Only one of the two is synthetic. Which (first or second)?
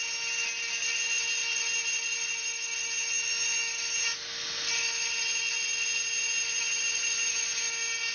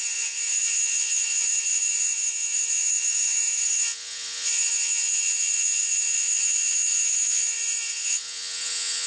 second